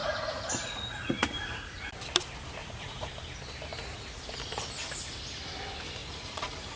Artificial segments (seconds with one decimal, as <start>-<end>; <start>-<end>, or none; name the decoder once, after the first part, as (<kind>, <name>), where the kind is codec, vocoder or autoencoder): 0.0-1.9 (vocoder, Vocos); 2.6-3.1; 6.0-6.8